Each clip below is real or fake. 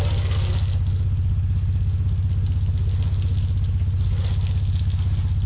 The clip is real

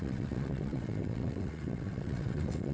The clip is fake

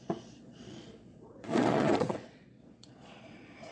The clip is fake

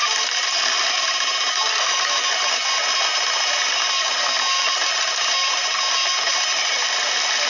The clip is real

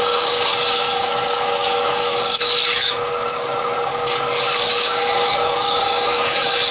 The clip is fake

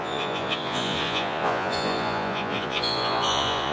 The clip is fake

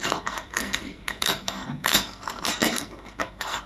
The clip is fake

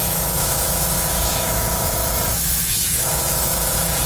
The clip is fake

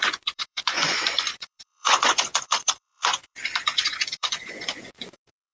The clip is fake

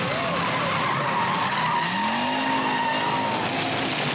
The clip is real